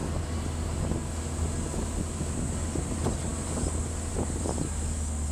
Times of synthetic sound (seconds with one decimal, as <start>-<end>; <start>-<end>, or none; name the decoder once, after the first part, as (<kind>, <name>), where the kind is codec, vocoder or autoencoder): none